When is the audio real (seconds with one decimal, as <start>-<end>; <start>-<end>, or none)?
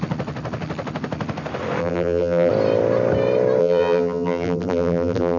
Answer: 0.0-1.8; 2.5-3.6